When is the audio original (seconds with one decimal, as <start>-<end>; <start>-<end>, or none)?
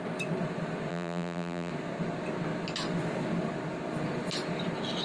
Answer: 0.0-0.9; 1.7-5.0